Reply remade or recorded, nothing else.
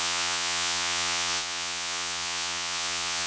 remade